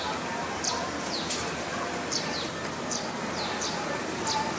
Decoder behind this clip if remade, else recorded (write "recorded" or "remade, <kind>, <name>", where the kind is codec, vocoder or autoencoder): recorded